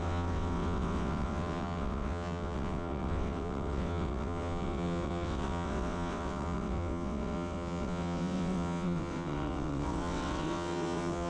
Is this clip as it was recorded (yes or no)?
no